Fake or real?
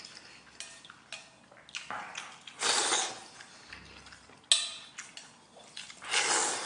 real